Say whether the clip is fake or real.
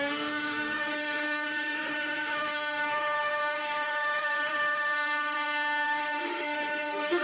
fake